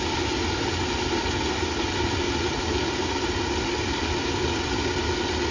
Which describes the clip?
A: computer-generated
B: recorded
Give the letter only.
B